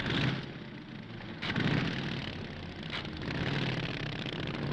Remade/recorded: recorded